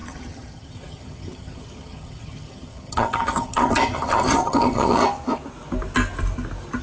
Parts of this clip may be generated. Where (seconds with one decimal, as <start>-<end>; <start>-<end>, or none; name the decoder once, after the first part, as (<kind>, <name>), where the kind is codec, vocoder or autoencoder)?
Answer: 0.0-5.0 (vocoder, HiFi-GAN)